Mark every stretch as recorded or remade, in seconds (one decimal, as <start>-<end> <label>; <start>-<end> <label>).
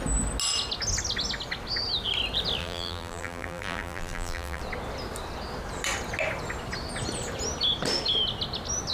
0.0-2.6 recorded; 2.6-4.6 remade; 4.6-8.9 recorded